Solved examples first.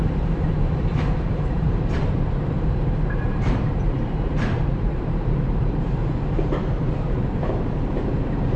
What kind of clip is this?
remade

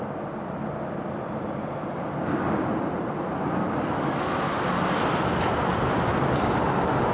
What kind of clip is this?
recorded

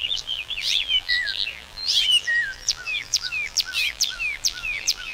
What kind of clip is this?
remade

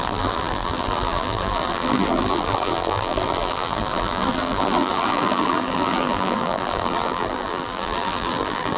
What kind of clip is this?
remade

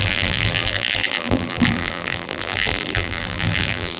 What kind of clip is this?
remade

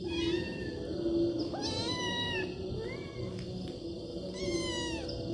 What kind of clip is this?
recorded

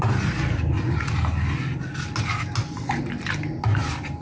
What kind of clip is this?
recorded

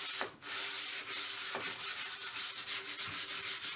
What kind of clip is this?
recorded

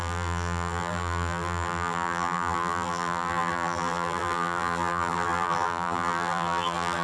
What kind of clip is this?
remade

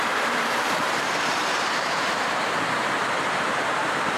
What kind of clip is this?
remade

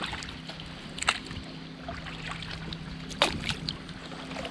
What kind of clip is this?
recorded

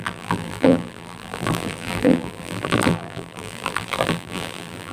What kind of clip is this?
remade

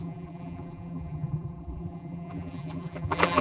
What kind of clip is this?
remade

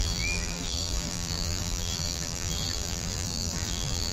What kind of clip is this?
remade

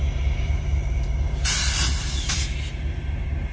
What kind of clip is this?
remade